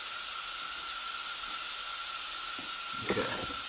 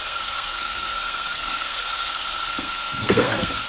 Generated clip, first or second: second